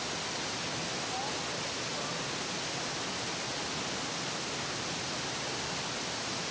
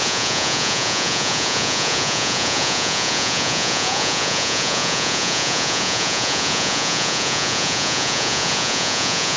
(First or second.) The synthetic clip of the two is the second